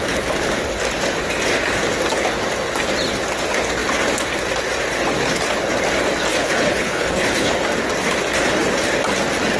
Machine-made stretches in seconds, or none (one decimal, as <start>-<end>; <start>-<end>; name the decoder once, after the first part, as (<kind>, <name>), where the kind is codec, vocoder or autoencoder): 6.3-7.5 (codec, HILCodec)